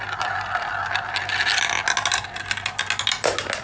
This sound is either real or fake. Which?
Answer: real